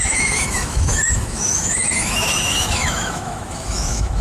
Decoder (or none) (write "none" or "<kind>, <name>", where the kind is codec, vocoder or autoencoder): autoencoder, DAC-VAE